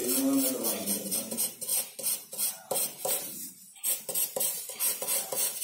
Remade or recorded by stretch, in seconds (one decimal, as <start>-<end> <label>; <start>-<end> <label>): 0.0-0.7 recorded; 0.7-5.6 remade